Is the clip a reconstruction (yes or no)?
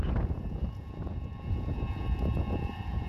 yes